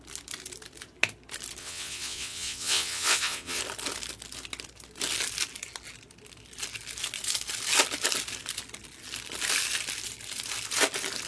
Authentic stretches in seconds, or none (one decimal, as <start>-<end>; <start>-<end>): 0.0-1.6; 3.6-11.3